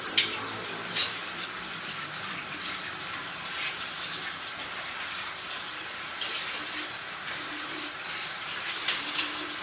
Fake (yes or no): no